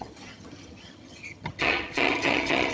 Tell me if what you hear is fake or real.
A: fake